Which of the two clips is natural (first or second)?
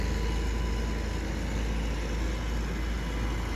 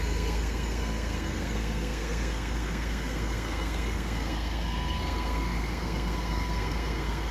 first